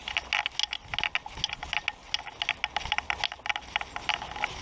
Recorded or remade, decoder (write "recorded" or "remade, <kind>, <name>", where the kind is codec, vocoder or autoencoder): recorded